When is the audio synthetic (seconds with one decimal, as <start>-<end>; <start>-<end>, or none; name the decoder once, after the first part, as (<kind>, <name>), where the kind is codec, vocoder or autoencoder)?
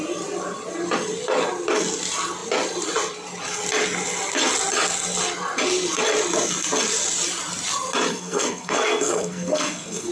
8.1-10.1 (codec, SNAC)